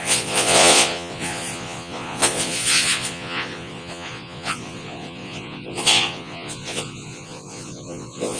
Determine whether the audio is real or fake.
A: fake